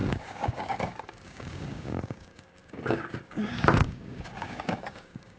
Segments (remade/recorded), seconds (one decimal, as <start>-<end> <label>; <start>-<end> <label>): 0.0-5.4 remade